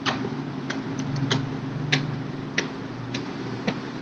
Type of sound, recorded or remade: remade